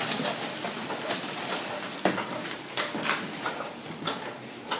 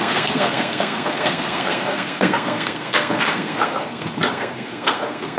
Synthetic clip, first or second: second